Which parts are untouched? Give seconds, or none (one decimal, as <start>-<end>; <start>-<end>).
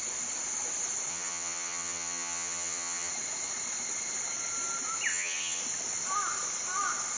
0.0-1.1; 3.1-5.1; 5.6-7.2